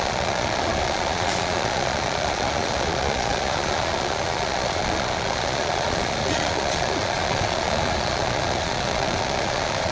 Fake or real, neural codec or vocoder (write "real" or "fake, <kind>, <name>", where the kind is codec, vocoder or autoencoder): fake, vocoder, Vocos